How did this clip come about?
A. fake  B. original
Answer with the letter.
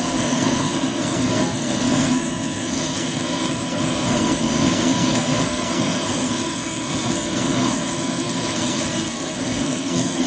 A